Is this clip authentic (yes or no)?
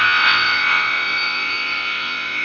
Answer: no